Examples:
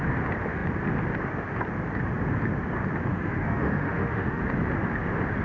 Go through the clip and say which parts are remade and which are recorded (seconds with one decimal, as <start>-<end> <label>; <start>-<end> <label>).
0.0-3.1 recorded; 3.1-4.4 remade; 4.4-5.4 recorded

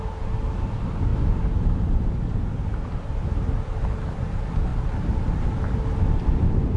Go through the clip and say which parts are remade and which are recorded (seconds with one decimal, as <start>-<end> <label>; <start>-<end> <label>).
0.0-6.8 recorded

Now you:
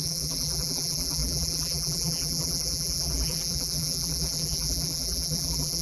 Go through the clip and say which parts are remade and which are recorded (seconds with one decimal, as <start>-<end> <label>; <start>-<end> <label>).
0.0-5.8 remade

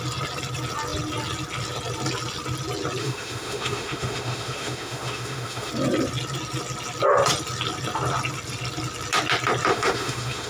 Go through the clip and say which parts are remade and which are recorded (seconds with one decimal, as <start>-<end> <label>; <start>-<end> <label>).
0.0-3.0 recorded; 3.0-5.7 remade; 5.7-9.7 recorded; 9.7-10.5 remade